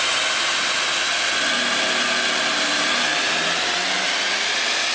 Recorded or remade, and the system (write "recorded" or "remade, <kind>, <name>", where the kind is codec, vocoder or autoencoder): recorded